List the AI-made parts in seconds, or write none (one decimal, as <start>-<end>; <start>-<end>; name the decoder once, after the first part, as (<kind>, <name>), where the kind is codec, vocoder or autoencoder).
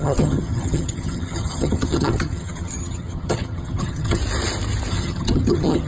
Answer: 0.0-4.2 (vocoder, HiFi-GAN); 4.9-5.9